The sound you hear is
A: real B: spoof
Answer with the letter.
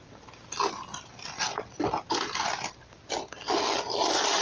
A